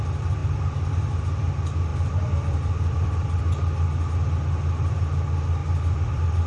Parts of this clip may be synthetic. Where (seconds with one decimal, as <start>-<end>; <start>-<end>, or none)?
1.9-3.4; 5.6-6.5